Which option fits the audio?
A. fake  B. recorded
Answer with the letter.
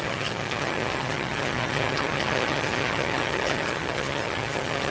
A